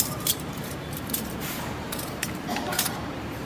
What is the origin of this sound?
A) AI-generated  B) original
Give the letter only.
A